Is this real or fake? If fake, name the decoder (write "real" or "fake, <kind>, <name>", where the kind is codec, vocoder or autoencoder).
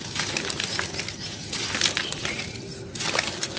real